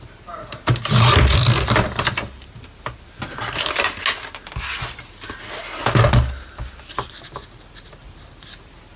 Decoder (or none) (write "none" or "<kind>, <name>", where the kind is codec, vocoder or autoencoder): none